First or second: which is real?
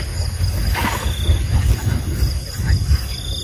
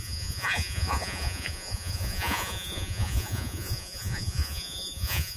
first